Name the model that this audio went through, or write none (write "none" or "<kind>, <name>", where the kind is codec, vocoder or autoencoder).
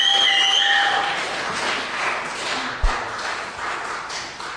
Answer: none